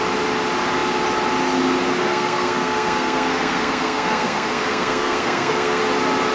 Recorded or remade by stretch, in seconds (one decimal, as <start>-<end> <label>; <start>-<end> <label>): 0.0-2.0 recorded; 2.0-5.8 remade; 5.8-6.3 recorded

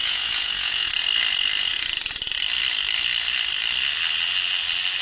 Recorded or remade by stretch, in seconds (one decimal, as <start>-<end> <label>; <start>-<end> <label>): 0.0-0.9 remade; 0.9-5.0 recorded